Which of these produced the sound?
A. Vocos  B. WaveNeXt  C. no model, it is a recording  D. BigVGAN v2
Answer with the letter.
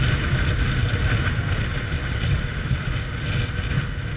C